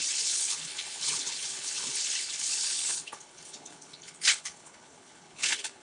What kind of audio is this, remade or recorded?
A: remade